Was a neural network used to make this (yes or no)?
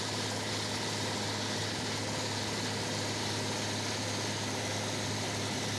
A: no